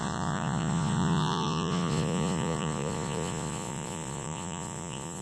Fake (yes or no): yes